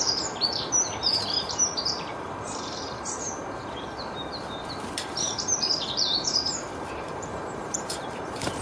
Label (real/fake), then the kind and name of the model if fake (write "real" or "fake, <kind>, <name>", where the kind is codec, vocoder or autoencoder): fake, vocoder, BigVGAN v2